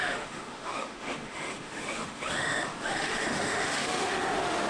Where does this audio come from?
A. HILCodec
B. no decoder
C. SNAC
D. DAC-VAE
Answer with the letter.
D